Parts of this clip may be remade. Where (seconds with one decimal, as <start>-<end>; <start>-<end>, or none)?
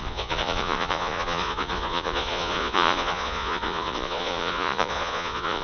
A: 0.0-5.6